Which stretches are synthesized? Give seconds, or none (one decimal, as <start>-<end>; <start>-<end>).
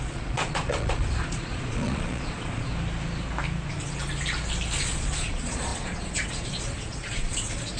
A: 0.0-2.7; 4.8-7.8